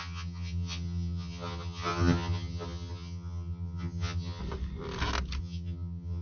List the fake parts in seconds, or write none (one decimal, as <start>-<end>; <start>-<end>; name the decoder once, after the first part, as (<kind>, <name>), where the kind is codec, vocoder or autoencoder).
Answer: 0.0-4.4 (vocoder, HiFi-GAN); 5.4-6.2